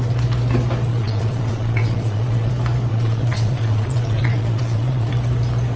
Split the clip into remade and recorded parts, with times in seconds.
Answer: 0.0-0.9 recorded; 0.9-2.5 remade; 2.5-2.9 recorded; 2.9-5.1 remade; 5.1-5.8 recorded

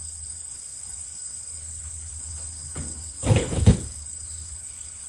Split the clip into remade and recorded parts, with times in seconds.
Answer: 0.0-5.1 remade

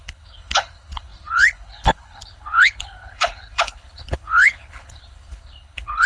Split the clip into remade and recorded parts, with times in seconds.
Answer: 0.0-6.1 remade

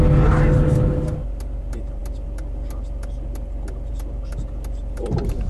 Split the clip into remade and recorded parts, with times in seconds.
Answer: 0.0-5.5 recorded

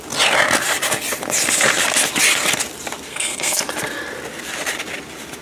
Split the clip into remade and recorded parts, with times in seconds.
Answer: 0.0-3.1 recorded; 3.1-3.6 remade; 3.6-5.4 recorded

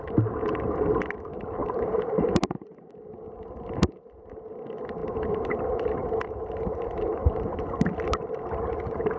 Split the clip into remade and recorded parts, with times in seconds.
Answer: 0.0-1.6 recorded; 1.6-2.8 remade; 2.8-5.0 recorded; 5.0-5.5 remade; 5.5-6.0 recorded; 6.0-7.6 remade; 7.6-9.2 recorded

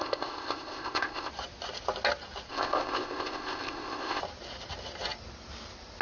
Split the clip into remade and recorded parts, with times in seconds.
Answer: 0.0-1.3 remade; 1.3-2.5 recorded; 2.5-4.2 remade; 4.2-6.0 recorded

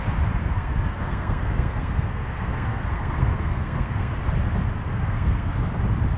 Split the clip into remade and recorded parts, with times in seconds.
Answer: 0.0-0.4 recorded; 0.4-4.1 remade; 4.1-4.9 recorded; 4.9-5.6 remade; 5.6-6.2 recorded